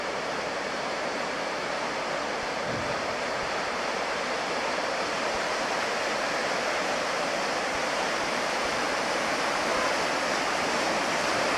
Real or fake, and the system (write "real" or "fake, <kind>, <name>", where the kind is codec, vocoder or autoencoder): fake, vocoder, BigVGAN v2